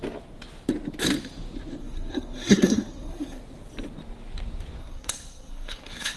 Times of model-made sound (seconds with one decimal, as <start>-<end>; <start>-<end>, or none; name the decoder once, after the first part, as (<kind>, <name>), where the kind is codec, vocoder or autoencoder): 1.8-3.4 (codec, SNAC); 4.8-6.2